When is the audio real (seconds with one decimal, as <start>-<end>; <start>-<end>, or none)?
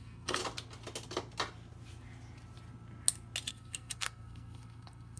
0.4-3.5